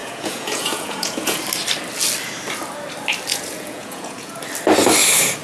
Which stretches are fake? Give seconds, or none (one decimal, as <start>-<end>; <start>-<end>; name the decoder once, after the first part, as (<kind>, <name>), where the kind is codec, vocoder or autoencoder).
0.0-1.4 (vocoder, Vocos); 3.3-4.4